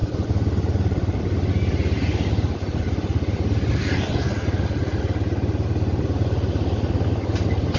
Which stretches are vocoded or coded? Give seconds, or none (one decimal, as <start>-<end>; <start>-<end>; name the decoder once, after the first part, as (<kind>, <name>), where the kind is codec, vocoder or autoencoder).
none